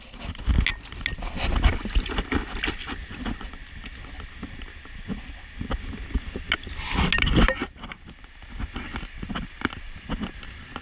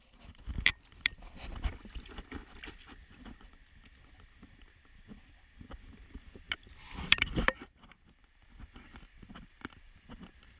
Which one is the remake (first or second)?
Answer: second